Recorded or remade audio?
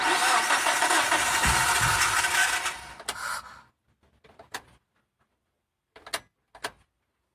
recorded